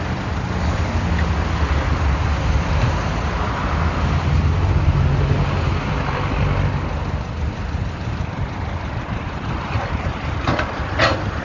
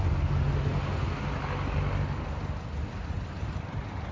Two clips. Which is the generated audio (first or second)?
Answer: first